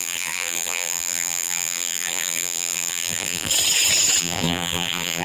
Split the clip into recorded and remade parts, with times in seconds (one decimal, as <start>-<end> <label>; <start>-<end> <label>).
0.0-3.5 remade; 3.5-4.2 recorded; 4.2-5.2 remade